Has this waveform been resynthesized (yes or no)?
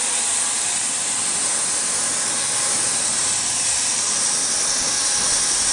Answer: no